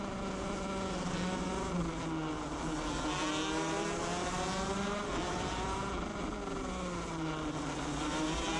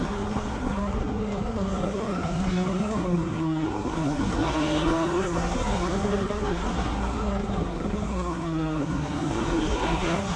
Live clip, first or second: first